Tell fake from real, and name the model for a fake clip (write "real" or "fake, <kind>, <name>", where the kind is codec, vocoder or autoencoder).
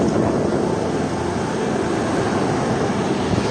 real